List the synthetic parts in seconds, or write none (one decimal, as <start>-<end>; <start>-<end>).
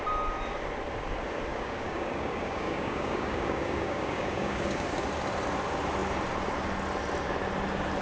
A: 1.5-4.9